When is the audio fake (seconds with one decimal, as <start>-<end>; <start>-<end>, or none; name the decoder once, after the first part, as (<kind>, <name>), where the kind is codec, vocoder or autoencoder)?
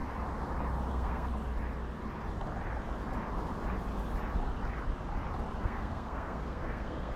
0.9-1.3 (codec, SNAC); 5.6-7.2